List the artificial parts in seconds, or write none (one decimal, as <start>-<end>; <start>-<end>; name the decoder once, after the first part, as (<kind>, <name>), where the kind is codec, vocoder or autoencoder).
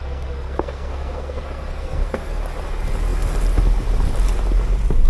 0.0-2.4 (codec, SNAC)